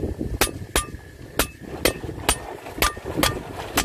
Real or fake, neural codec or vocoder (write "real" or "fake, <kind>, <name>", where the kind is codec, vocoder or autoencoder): real